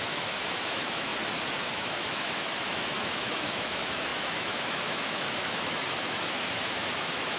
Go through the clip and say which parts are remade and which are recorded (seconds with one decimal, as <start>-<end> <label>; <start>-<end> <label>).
0.0-1.1 remade; 1.1-1.7 recorded; 1.7-7.4 remade